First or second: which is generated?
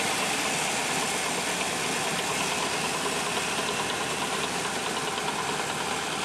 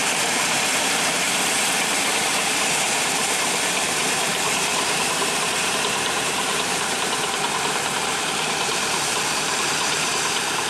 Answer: second